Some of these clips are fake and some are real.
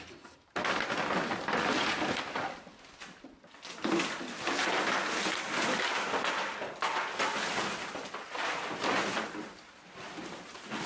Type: real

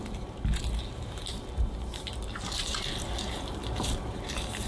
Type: fake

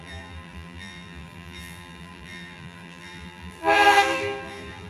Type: fake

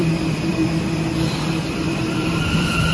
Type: fake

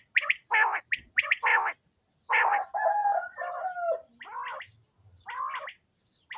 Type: real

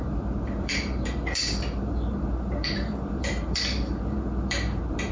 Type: fake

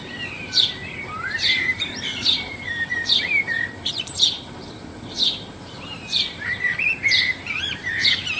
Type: fake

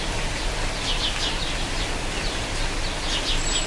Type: real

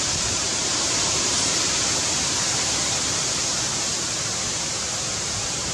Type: fake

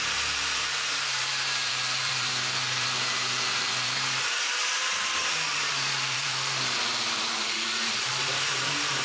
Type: fake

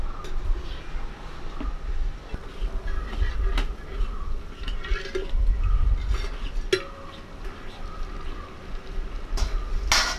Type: real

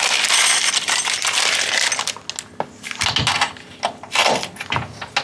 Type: real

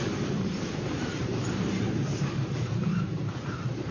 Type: fake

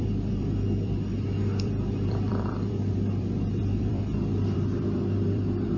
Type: fake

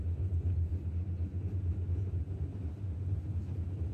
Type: fake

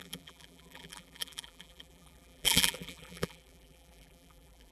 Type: fake